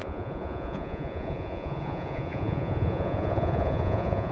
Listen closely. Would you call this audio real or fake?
fake